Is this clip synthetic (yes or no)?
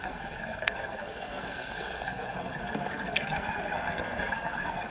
yes